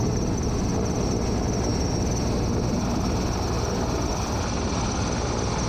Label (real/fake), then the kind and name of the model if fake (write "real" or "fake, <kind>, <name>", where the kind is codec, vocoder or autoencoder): real